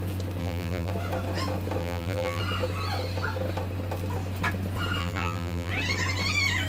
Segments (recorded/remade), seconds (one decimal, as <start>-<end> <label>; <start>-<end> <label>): 0.0-0.4 recorded; 0.4-0.9 remade; 0.9-1.8 recorded; 1.8-2.4 remade; 2.4-5.0 recorded; 5.0-5.7 remade; 5.7-6.7 recorded